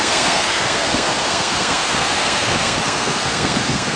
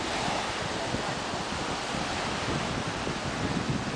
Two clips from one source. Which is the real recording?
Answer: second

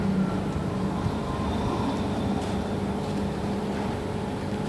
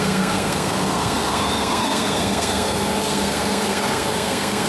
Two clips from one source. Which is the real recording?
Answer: first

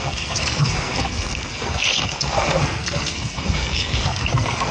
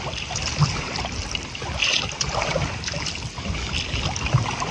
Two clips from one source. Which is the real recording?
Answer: second